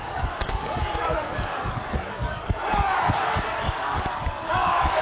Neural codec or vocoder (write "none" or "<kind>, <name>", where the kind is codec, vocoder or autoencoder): codec, DAC